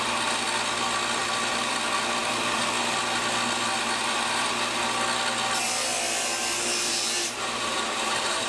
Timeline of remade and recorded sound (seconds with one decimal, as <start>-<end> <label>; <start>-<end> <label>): 0.0-6.9 recorded; 6.9-8.5 remade